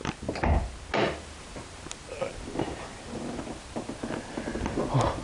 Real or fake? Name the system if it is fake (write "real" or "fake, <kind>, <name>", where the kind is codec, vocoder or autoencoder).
real